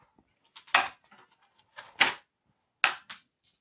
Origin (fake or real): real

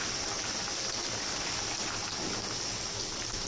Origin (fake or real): real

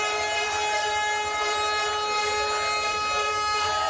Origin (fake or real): real